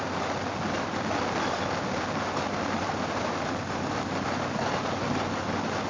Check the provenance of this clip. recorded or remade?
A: recorded